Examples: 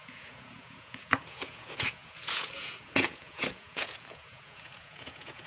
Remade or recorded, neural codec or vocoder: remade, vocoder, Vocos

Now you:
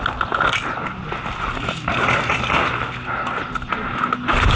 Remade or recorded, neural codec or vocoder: recorded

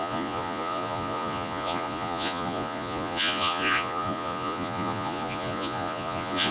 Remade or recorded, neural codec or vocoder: remade, vocoder, Vocos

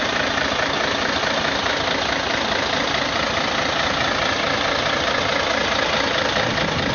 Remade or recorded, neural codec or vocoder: recorded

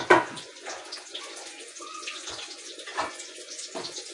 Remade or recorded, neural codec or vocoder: remade, vocoder, Vocos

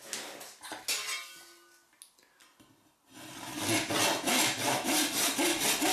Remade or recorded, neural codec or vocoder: recorded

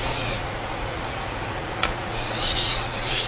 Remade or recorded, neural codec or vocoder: remade, vocoder, Vocos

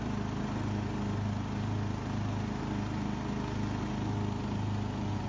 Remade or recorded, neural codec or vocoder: recorded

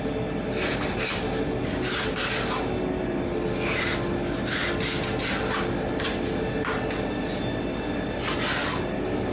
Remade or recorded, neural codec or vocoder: recorded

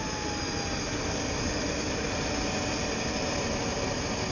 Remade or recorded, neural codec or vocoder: recorded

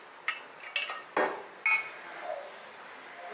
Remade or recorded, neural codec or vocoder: recorded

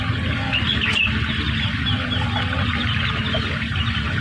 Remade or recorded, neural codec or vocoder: recorded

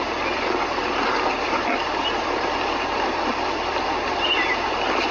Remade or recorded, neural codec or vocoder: recorded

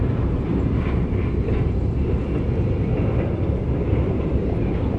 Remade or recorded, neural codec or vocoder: recorded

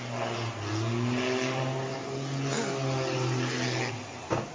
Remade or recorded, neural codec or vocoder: recorded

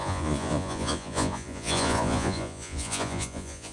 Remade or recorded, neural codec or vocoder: remade, vocoder, Vocos